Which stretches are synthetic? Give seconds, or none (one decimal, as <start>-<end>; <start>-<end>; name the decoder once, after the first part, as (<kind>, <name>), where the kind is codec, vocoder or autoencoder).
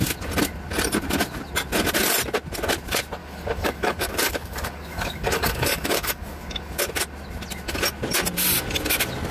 3.2-6.8 (codec, DAC)